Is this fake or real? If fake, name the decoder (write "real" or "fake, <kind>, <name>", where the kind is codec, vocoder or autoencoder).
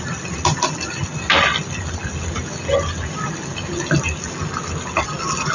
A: real